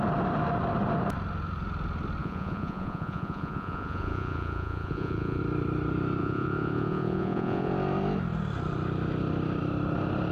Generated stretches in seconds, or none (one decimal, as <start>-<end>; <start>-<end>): 2.2-5.4; 6.2-7.7